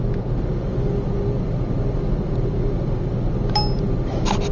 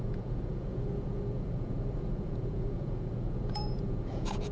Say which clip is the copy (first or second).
second